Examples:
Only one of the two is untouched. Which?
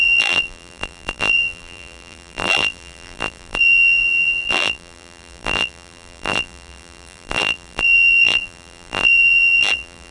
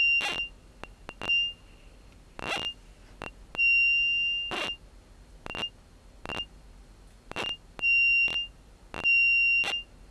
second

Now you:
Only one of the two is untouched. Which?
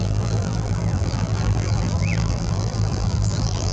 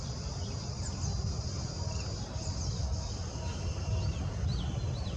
second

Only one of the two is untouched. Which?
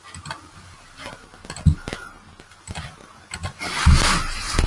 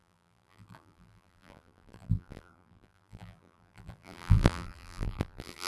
first